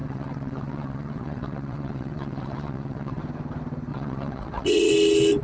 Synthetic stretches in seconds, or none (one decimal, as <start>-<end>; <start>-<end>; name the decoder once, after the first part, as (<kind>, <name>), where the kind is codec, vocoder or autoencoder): 0.0-3.2 (vocoder, WaveNeXt); 3.9-4.9